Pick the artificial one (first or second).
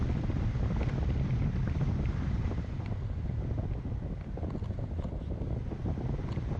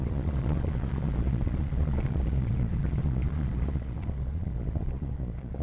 second